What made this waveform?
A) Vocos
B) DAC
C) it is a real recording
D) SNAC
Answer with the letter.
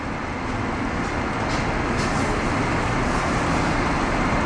C